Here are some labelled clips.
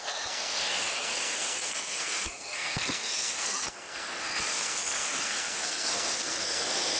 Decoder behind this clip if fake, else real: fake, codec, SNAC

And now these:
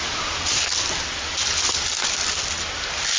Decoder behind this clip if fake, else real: fake, vocoder, BigVGAN v2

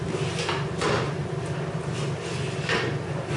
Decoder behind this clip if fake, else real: real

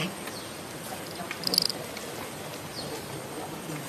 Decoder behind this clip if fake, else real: real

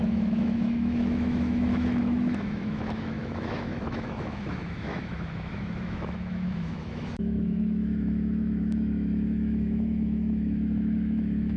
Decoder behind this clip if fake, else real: fake, autoencoder, DAC-VAE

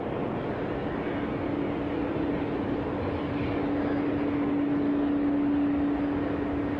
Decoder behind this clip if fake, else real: real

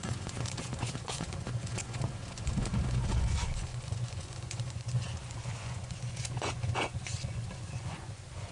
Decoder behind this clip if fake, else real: fake, vocoder, Vocos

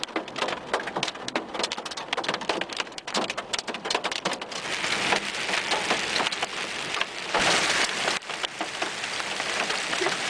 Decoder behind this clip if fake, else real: real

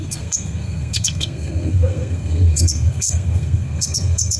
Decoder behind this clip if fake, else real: fake, codec, SNAC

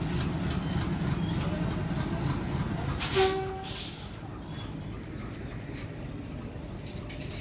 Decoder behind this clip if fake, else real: real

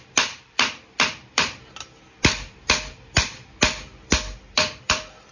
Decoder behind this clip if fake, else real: fake, vocoder, BigVGAN v2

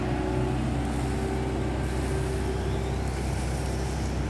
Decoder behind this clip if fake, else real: real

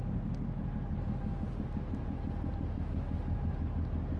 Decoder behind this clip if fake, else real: real